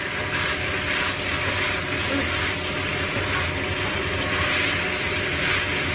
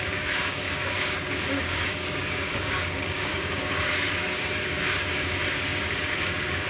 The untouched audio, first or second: first